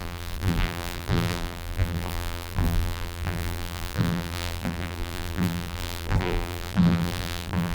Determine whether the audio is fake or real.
fake